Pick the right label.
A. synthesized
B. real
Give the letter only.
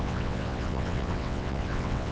A